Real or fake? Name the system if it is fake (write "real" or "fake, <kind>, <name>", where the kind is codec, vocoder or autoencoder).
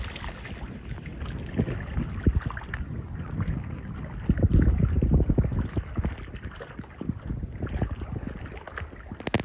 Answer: real